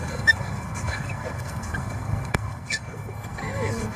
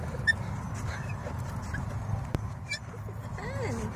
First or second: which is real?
second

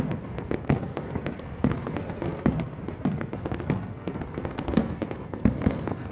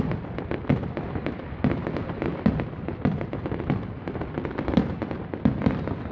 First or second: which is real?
second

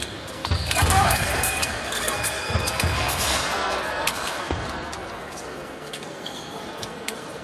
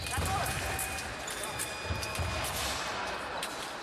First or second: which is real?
second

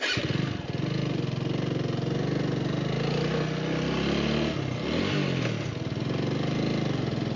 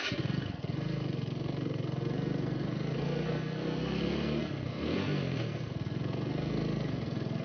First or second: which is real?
first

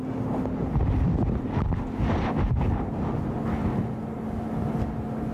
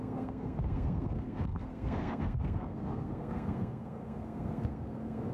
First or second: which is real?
first